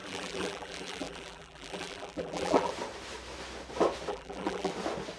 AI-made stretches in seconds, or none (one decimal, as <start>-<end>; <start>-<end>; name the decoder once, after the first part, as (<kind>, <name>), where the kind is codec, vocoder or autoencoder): 0.0-2.7 (vocoder, BigVGAN v2); 4.1-4.7